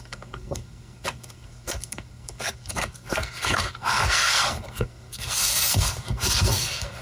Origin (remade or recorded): remade